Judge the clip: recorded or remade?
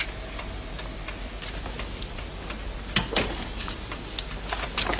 recorded